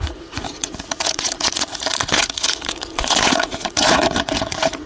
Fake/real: fake